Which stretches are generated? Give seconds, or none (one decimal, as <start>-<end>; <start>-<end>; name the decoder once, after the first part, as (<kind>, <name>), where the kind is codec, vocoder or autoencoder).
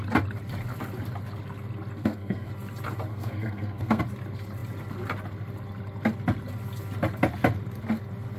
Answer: 2.0-2.5 (codec, SNAC); 3.1-4.0